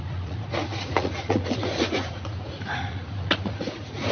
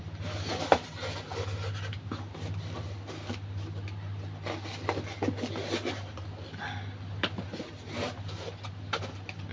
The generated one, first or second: first